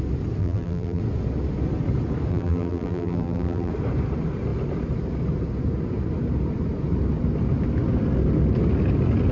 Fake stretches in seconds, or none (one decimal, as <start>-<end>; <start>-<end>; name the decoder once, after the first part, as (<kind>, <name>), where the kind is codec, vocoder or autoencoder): 0.4-1.0 (vocoder, BigVGAN v2); 2.3-3.7